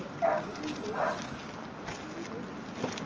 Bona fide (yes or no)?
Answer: yes